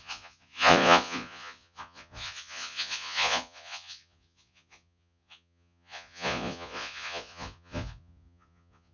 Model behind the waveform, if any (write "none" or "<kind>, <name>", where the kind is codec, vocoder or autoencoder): vocoder, Vocos